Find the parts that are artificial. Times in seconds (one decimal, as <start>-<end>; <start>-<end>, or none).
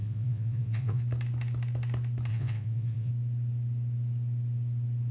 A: 0.0-1.0; 2.3-3.1